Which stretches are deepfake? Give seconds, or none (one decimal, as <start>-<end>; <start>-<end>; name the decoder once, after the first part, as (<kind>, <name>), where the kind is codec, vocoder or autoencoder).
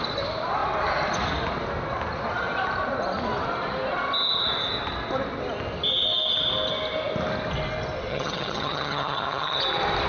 8.1-9.6 (vocoder, HiFi-GAN)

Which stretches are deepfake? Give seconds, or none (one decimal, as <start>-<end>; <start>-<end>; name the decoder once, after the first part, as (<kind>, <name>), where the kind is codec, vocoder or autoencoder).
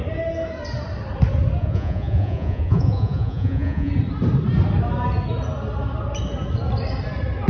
1.6-3.9 (vocoder, Vocos)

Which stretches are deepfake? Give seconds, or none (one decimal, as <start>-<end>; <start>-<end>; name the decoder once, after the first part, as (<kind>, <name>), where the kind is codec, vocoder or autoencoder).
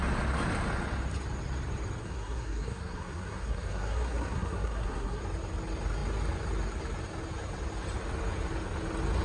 2.0-5.2 (codec, SNAC)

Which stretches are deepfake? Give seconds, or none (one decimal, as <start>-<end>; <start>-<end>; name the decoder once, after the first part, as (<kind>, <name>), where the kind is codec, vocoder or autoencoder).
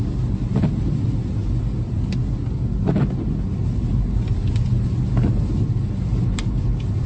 none